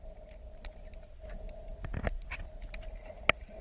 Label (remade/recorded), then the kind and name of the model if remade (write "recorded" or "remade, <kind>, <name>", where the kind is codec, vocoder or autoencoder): recorded